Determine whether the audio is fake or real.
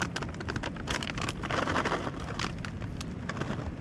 fake